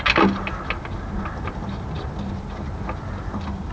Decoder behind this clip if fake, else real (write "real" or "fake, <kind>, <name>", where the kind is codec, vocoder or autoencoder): real